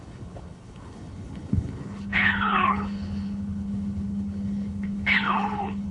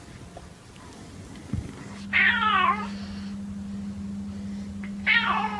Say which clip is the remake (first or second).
first